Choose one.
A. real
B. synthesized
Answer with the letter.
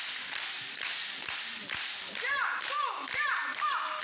A